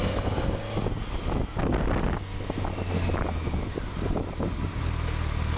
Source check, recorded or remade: recorded